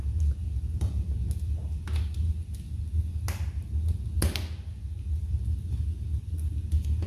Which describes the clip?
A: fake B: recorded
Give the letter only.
B